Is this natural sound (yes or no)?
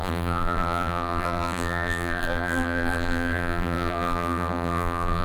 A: no